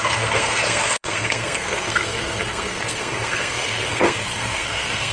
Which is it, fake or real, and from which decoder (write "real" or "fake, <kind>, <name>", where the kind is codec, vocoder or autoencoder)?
fake, codec, SNAC